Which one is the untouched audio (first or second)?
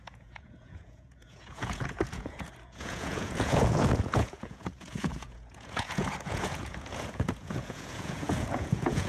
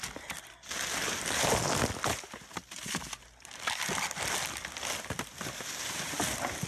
second